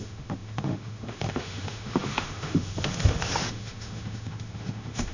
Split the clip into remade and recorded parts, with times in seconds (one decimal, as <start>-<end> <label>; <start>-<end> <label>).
0.0-5.1 remade

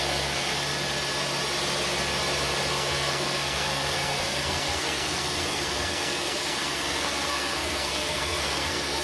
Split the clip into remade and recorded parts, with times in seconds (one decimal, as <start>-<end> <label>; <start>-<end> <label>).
0.0-0.5 remade; 0.5-2.7 recorded; 2.7-9.0 remade